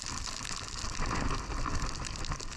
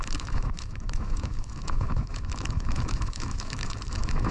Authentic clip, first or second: first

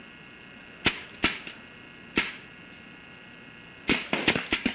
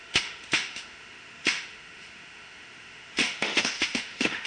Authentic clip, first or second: first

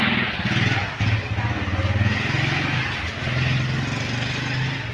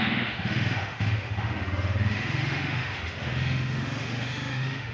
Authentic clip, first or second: first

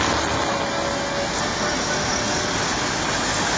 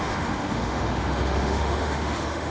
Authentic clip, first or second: first